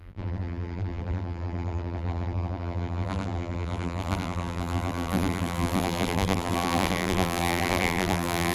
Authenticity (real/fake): fake